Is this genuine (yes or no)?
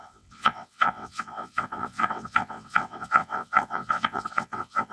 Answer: no